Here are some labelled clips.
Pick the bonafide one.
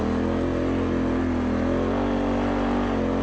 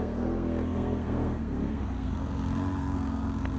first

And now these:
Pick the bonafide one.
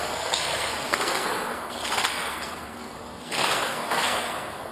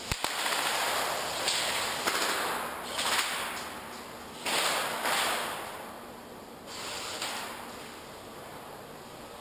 second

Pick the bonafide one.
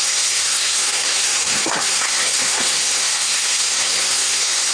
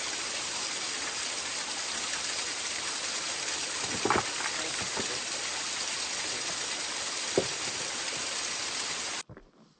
second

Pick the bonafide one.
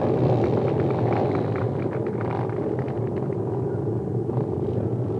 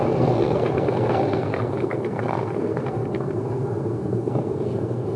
first